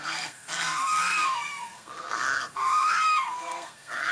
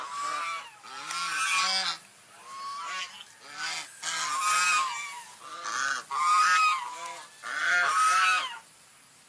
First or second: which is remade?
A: first